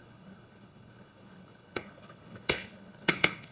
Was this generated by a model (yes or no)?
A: yes